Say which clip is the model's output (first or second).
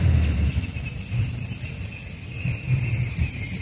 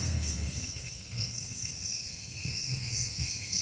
second